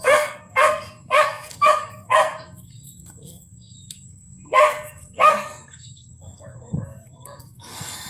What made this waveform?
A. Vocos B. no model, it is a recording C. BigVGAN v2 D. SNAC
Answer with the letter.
D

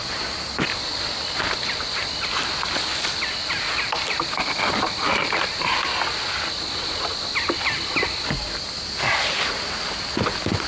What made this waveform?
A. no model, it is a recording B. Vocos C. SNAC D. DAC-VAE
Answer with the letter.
A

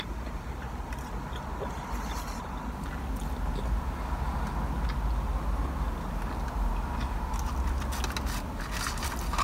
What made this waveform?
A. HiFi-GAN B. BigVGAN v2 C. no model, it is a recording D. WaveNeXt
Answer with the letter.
C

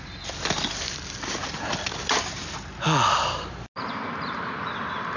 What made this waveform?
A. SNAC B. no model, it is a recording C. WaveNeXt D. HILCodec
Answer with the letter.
B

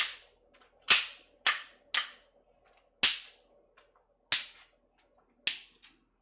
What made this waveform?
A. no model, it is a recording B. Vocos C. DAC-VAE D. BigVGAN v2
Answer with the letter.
A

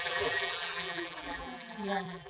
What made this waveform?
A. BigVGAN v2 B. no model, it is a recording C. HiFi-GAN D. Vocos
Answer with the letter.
A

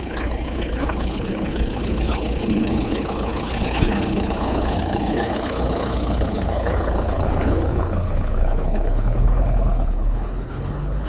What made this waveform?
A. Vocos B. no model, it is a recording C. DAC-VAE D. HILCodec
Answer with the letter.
D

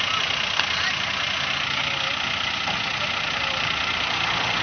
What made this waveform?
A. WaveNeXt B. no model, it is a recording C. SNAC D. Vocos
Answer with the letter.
B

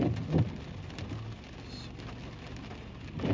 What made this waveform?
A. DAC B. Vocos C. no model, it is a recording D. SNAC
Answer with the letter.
C